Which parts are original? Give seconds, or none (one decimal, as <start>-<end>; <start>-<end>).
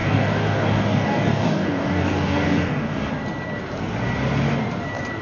3.1-5.2